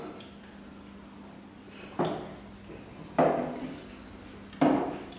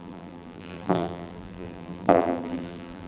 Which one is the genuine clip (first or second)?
first